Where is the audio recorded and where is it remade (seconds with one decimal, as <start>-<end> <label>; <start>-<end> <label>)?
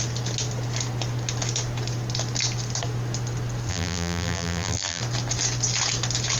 0.0-3.7 recorded; 3.7-5.0 remade; 5.0-6.4 recorded